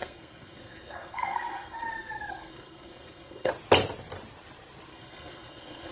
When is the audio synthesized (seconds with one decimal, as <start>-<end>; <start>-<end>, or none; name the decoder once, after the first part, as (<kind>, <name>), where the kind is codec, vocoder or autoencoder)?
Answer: 0.0-3.5 (codec, SNAC); 4.9-5.9